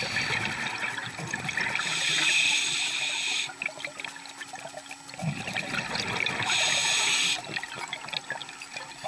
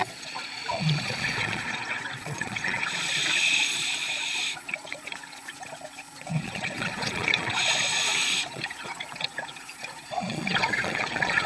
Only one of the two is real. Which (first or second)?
first